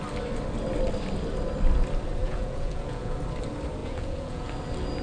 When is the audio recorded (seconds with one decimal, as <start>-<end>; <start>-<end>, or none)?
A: 0.0-2.2; 3.2-3.8; 4.5-5.0